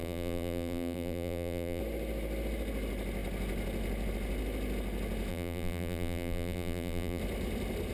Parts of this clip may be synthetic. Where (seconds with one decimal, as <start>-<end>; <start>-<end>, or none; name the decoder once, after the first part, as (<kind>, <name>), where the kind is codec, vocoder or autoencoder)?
0.0-1.8 (vocoder, BigVGAN v2); 5.3-7.2